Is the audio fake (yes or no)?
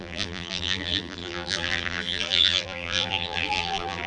yes